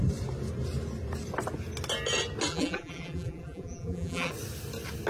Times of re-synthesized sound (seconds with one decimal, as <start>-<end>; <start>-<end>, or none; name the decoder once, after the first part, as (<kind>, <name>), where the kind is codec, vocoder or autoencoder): 2.5-4.3 (vocoder, BigVGAN v2)

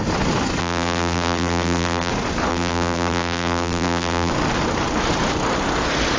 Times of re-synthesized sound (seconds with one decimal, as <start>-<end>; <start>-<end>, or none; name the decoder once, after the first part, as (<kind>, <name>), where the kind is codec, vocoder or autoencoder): 0.6-2.1 (vocoder, BigVGAN v2); 2.5-4.3

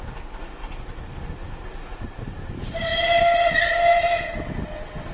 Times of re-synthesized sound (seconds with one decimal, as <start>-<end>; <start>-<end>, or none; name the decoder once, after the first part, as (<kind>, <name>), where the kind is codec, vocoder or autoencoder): 0.6-2.5 (vocoder, BigVGAN v2)

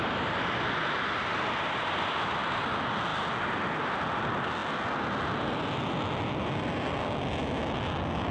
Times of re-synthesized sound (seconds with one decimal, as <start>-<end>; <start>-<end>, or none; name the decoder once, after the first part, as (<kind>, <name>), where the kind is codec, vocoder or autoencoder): none